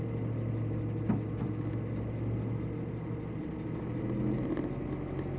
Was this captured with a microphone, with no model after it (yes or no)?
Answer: yes